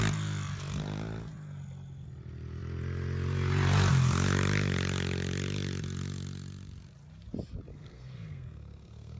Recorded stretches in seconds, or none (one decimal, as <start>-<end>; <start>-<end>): 0.0-7.7